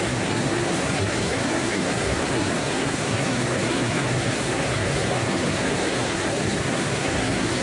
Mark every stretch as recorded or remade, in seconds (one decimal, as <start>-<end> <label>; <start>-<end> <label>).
0.0-7.6 remade